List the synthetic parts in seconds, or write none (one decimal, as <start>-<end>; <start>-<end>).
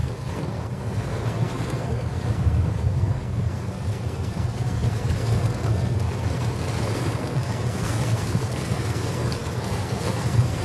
0.0-10.6